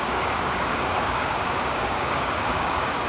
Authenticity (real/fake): fake